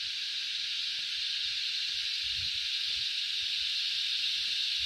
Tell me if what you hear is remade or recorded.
recorded